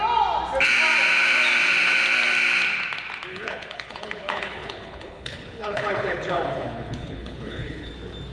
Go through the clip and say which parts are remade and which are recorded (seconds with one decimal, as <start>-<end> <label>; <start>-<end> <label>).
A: 0.0-3.3 recorded; 3.3-7.9 remade; 7.9-8.3 recorded